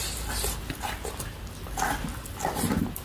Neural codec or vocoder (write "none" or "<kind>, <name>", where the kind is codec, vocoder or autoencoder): none